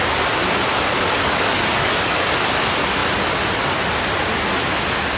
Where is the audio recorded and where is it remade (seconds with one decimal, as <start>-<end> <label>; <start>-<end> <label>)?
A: 0.0-0.9 recorded; 0.9-2.6 remade; 2.6-5.2 recorded